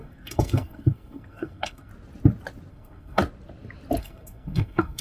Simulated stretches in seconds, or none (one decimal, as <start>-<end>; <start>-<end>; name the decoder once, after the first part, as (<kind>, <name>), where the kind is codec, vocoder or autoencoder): 0.0-1.9 (codec, SNAC); 2.7-3.2; 4.0-5.0